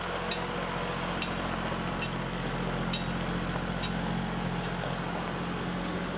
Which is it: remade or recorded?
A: recorded